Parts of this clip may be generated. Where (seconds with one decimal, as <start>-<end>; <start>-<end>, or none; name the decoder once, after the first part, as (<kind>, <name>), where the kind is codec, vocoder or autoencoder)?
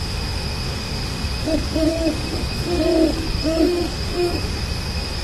0.0-5.2 (autoencoder, DAC-VAE)